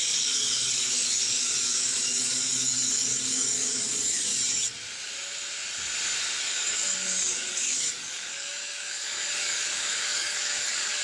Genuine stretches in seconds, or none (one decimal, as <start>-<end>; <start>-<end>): 4.3-6.4